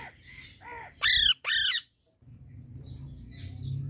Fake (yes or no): no